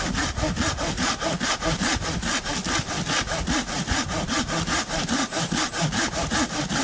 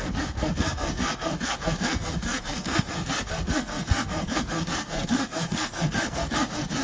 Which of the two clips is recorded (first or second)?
first